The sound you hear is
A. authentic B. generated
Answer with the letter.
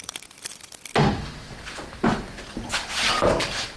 A